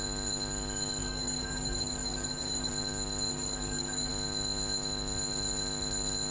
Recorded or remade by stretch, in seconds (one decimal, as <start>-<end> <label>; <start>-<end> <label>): 0.0-1.0 recorded; 1.0-2.7 remade; 2.7-3.3 recorded; 3.3-4.1 remade; 4.1-6.3 recorded

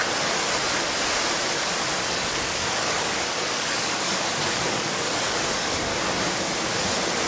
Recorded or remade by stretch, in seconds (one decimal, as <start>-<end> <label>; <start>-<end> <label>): 0.0-2.1 recorded; 2.1-5.9 remade; 5.9-7.3 recorded

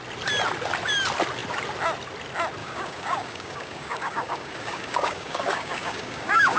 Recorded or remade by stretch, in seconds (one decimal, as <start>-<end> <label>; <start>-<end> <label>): 0.0-2.6 recorded; 2.6-6.6 remade